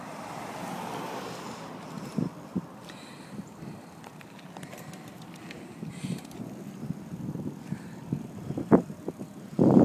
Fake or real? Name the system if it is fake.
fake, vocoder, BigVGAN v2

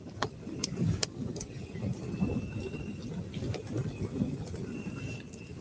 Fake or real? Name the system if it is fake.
fake, vocoder, BigVGAN v2